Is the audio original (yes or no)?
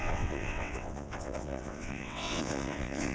no